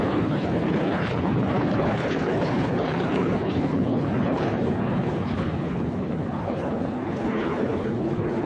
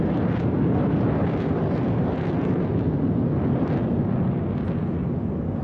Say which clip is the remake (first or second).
first